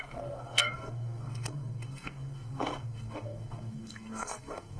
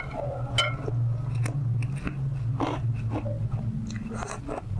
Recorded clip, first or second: second